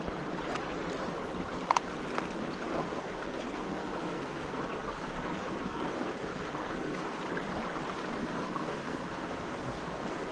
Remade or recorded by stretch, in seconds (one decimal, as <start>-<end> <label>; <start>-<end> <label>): 0.0-2.8 recorded; 2.8-7.2 remade; 7.2-8.2 recorded; 8.2-10.3 remade